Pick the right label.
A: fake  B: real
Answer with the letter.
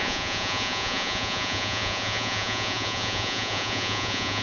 A